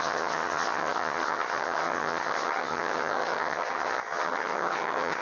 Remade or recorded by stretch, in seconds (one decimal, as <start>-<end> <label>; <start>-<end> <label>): 0.0-5.2 remade